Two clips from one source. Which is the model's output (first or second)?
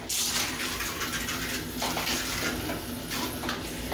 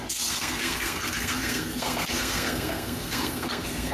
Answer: second